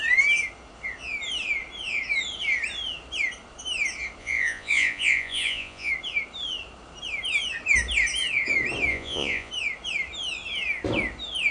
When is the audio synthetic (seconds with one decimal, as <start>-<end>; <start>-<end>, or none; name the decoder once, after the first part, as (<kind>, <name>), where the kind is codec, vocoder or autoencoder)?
4.2-5.9 (vocoder, Vocos); 8.9-9.5